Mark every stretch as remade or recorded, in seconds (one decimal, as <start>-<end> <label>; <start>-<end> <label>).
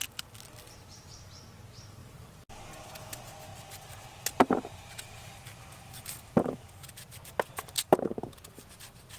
0.0-2.0 recorded; 2.0-2.5 remade; 2.5-9.2 recorded